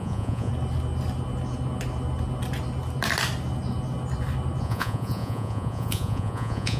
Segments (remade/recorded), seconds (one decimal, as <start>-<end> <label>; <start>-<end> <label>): 0.0-0.5 remade; 0.5-4.6 recorded; 4.6-6.8 remade